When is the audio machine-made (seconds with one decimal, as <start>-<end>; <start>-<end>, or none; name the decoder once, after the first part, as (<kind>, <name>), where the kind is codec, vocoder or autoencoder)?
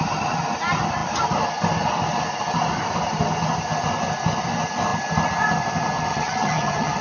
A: 6.1-7.0 (vocoder, HiFi-GAN)